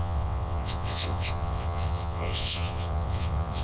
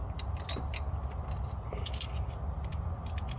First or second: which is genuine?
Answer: second